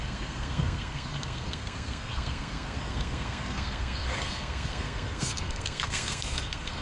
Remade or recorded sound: remade